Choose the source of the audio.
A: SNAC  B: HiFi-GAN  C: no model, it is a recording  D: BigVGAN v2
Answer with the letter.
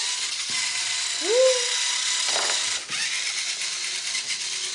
C